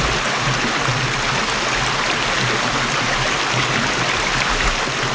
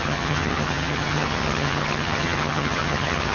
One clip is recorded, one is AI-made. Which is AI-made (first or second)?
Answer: second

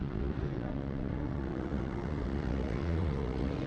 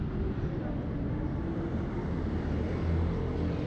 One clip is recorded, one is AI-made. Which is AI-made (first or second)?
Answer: first